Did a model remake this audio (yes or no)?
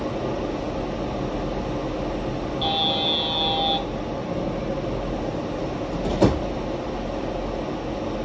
no